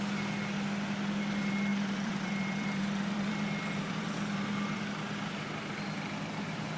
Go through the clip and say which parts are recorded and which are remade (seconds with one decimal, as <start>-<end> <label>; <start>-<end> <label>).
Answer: 0.0-1.7 recorded; 1.7-4.8 remade; 4.8-6.8 recorded